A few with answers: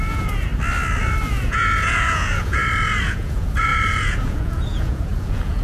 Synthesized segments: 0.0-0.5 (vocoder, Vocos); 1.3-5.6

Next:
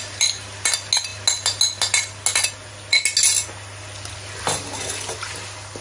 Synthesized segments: none

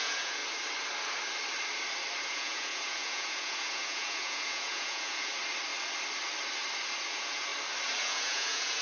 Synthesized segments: 0.0-0.4 (vocoder, Vocos); 2.2-5.3; 7.1-7.5; 8.0-8.8